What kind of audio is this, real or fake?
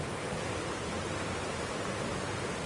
real